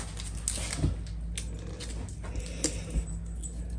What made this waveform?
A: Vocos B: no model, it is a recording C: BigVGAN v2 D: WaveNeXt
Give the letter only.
B